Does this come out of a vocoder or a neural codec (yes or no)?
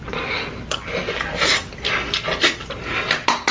no